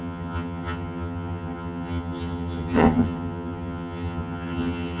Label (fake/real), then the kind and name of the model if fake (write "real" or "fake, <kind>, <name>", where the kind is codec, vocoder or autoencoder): fake, vocoder, HiFi-GAN